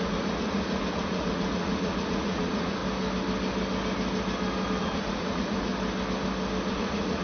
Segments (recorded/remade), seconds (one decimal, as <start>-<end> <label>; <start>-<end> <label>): 0.0-2.8 remade; 2.8-4.8 recorded; 4.8-5.7 remade; 5.7-6.7 recorded; 6.7-7.2 remade